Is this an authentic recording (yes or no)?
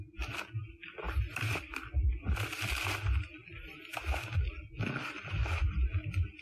yes